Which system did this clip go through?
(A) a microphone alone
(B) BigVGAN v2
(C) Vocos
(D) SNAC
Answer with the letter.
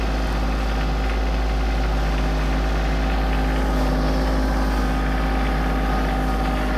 A